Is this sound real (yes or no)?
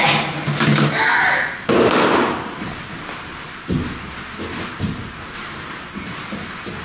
yes